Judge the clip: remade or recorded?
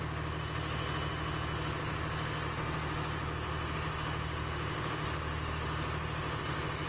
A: recorded